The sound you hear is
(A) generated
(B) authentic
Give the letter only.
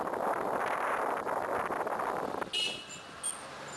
B